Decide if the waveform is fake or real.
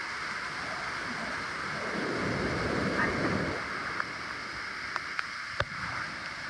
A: real